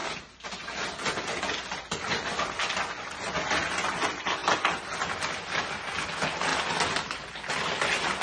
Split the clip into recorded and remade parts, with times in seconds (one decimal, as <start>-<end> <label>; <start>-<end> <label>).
0.0-8.2 recorded